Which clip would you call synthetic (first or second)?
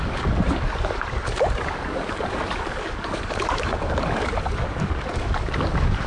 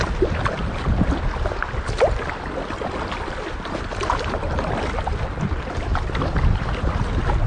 first